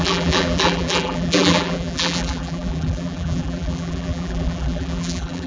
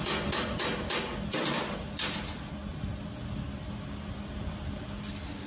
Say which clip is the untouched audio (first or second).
second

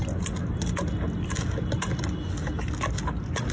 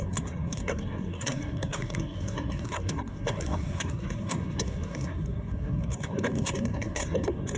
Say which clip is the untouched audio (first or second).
first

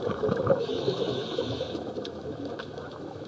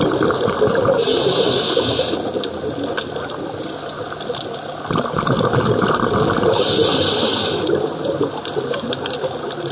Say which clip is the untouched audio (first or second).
second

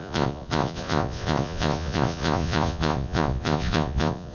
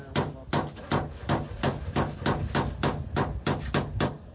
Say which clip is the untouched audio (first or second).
second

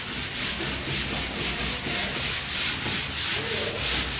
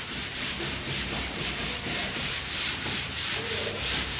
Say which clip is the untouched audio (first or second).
first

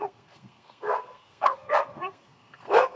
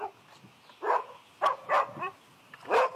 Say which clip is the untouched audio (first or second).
second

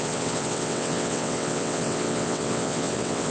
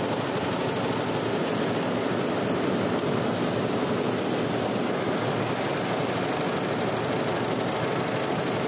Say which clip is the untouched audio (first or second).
second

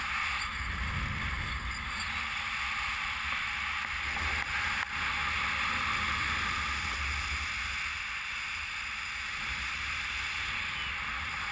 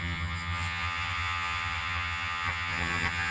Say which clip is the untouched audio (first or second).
first